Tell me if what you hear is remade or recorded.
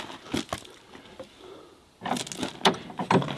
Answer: recorded